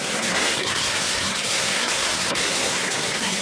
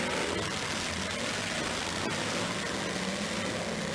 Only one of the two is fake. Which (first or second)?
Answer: first